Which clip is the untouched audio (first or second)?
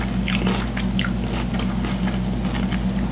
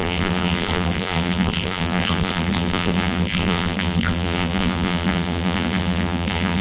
first